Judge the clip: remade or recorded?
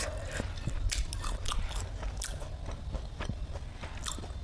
recorded